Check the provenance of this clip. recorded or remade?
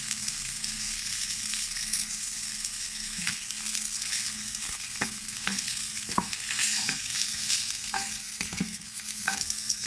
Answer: remade